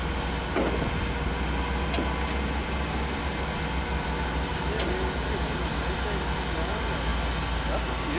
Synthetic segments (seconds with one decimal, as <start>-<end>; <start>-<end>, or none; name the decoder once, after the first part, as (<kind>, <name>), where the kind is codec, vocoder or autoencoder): none